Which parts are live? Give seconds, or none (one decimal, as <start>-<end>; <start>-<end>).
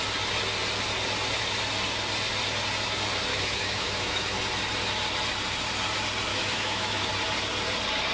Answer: 0.0-3.3; 4.4-6.3; 7.1-8.1